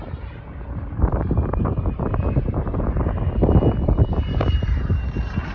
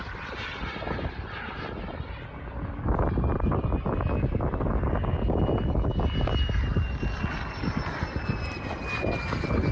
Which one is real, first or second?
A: second